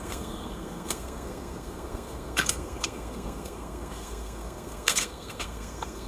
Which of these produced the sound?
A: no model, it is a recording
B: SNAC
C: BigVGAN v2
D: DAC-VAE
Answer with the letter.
B